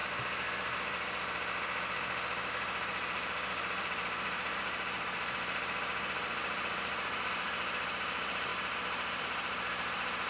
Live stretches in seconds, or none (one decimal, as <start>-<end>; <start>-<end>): 0.0-2.5; 8.5-9.2